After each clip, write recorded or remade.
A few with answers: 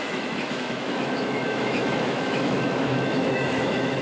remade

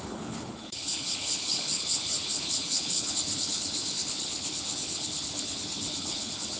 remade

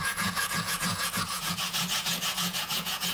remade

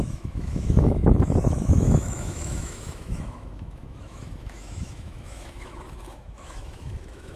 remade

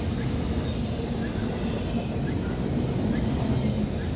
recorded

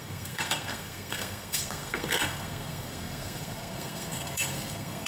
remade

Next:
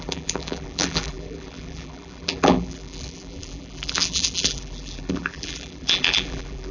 remade